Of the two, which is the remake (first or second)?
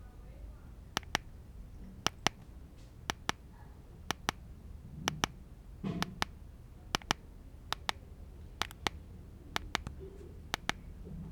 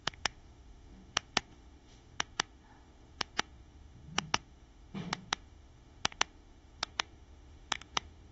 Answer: second